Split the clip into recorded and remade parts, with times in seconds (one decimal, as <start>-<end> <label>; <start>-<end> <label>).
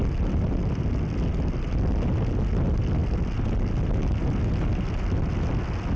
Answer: 0.0-0.8 remade; 0.8-6.0 recorded